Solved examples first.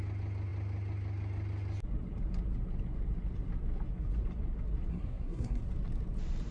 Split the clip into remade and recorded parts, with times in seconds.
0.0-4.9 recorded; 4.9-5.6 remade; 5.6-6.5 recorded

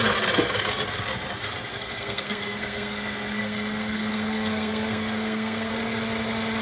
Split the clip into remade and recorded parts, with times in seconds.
0.0-1.7 recorded; 1.7-5.7 remade; 5.7-6.6 recorded

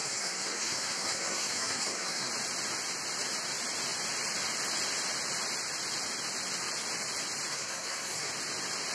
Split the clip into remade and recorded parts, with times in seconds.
0.0-2.3 remade; 2.3-7.5 recorded; 7.5-8.3 remade; 8.3-8.9 recorded

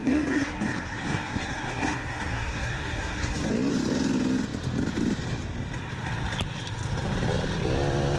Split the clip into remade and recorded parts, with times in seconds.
0.0-3.5 remade; 3.5-8.2 recorded

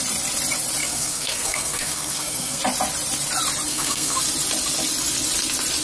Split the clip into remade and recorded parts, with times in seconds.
0.0-0.8 recorded; 0.8-2.6 remade; 2.6-3.7 recorded; 3.7-4.2 remade; 4.2-5.8 recorded

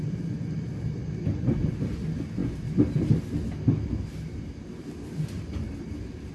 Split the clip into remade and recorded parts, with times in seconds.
0.0-6.3 recorded

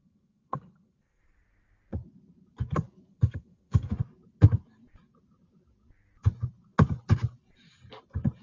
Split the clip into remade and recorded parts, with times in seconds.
0.0-1.2 remade; 1.2-3.1 recorded; 3.1-3.9 remade; 3.9-8.4 recorded